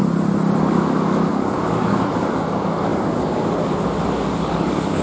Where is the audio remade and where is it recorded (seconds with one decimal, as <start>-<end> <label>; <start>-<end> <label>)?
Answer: 0.0-0.6 recorded; 0.6-5.0 remade